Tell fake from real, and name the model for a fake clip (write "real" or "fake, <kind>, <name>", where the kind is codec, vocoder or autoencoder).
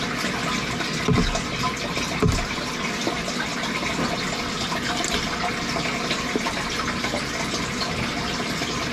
real